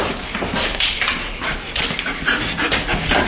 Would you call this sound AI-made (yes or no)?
no